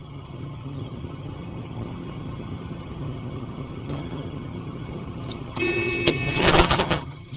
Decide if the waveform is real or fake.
fake